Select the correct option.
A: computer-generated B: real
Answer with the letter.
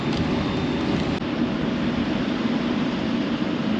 B